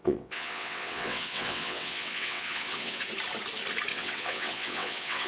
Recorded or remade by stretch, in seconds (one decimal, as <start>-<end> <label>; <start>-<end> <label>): 0.0-3.0 remade; 3.0-3.9 recorded; 3.9-5.3 remade